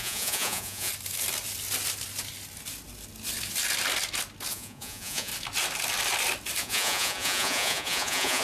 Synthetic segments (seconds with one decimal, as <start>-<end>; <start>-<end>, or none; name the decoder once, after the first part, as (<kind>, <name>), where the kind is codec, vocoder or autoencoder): 0.0-0.9 (vocoder, Vocos); 4.5-5.3; 6.6-8.4